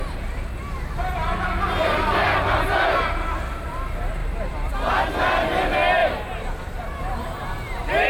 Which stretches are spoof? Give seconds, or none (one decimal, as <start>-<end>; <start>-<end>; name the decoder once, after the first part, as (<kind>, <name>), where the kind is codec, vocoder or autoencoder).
4.2-4.9 (vocoder, BigVGAN v2); 6.0-7.0